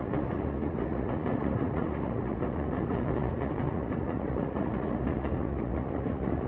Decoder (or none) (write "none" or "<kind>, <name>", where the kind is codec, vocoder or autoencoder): vocoder, Vocos